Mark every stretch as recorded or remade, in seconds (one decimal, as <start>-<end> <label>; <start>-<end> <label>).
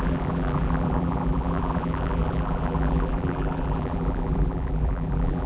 0.0-5.5 remade